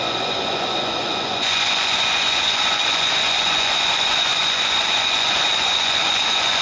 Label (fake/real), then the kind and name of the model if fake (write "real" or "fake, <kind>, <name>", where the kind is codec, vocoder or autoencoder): fake, vocoder, Vocos